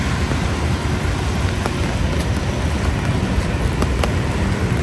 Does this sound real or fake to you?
real